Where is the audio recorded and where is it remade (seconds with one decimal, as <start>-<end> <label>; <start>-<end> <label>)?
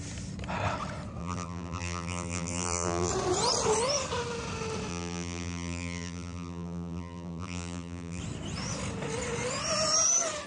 0.0-1.2 recorded; 1.2-3.1 remade; 3.1-4.9 recorded; 4.9-8.2 remade; 8.2-10.5 recorded